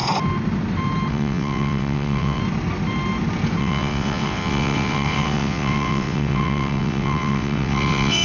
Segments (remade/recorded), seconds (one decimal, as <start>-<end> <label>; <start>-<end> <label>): 0.0-1.1 recorded; 1.1-2.4 remade; 2.4-3.6 recorded; 3.6-8.2 remade